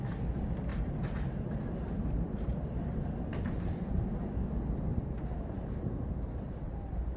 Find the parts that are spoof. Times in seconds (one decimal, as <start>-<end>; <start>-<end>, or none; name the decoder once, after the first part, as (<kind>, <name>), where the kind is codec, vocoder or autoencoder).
0.7-4.4 (vocoder, BigVGAN v2); 4.9-7.2